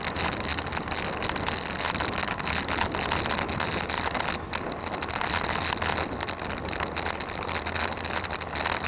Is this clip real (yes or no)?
yes